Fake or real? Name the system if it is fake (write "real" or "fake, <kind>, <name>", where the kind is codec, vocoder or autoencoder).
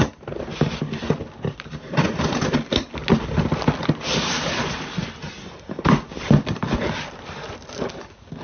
real